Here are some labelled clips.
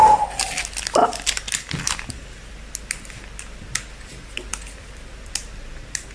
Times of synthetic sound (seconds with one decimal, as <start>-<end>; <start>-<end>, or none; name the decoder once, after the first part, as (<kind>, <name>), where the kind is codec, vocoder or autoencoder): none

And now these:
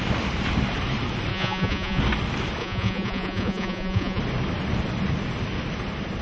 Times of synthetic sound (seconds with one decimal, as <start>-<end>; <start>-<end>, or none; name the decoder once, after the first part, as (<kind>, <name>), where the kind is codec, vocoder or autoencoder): 1.3-2.0 (vocoder, Vocos); 2.6-4.2

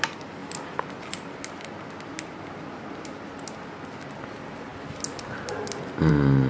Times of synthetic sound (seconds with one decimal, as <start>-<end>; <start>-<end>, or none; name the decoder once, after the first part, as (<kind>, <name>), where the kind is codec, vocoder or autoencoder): none

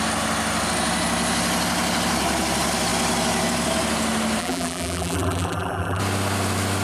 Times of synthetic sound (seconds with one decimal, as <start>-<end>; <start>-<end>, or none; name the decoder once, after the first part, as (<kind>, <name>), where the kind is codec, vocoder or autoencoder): 4.4-6.0 (vocoder, BigVGAN v2)

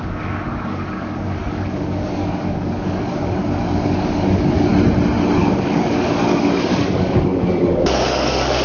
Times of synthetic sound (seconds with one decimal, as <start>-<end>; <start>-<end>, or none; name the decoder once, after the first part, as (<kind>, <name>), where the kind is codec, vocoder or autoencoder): 0.0-4.7 (codec, DAC); 5.4-8.6

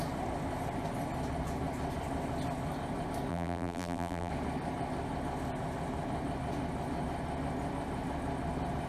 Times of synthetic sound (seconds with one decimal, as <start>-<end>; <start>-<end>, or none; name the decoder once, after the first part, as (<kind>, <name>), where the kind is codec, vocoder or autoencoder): 3.3-4.3 (vocoder, BigVGAN v2)